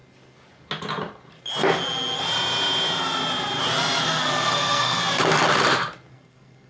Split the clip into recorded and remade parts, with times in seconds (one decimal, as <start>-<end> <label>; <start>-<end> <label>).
0.0-4.0 recorded; 4.0-5.0 remade; 5.0-6.1 recorded; 6.1-6.7 remade